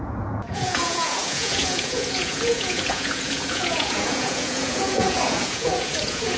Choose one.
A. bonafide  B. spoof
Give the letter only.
B